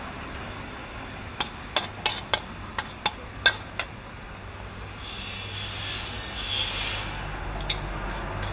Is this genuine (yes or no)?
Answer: yes